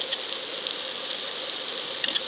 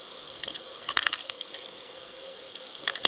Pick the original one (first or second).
first